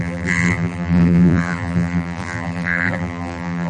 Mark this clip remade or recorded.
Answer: remade